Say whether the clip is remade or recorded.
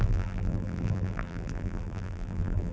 remade